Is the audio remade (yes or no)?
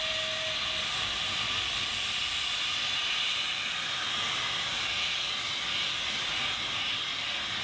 no